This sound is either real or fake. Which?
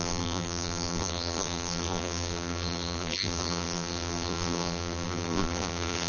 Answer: fake